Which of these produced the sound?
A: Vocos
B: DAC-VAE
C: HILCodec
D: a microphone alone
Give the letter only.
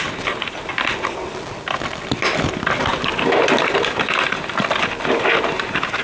D